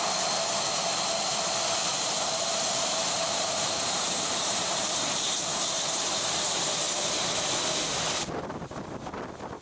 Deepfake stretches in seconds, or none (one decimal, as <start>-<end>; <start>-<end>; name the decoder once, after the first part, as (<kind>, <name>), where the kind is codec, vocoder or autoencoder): 1.9-6.8 (vocoder, BigVGAN v2)